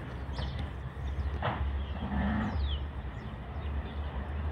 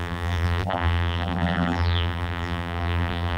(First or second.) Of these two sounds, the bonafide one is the first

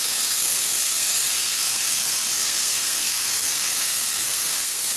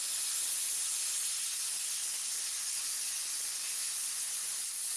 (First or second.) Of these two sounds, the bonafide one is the second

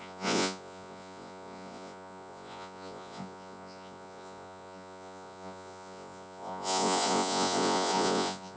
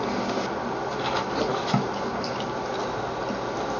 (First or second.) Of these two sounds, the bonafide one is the second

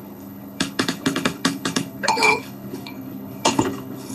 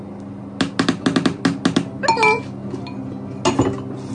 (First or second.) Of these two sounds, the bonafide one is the second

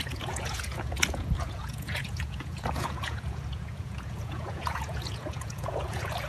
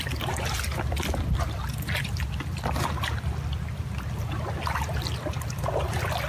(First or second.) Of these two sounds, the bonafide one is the second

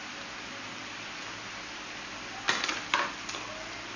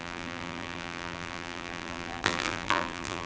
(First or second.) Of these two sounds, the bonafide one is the first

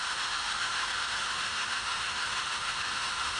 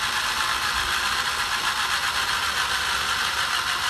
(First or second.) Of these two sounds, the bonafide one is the second